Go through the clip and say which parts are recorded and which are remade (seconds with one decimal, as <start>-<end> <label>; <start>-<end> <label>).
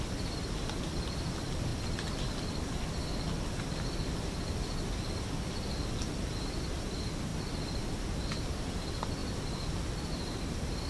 0.0-7.3 recorded; 7.3-8.4 remade; 8.4-10.9 recorded